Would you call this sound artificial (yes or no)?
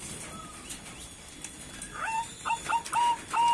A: no